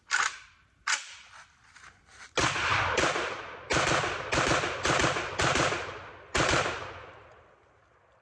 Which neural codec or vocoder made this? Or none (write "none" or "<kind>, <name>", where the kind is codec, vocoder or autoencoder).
none